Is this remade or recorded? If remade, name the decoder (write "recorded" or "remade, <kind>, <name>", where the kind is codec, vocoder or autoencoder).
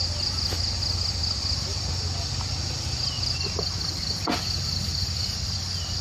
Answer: recorded